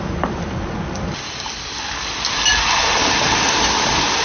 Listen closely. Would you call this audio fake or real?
real